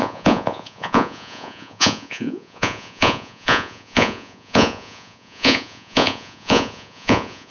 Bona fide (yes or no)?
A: no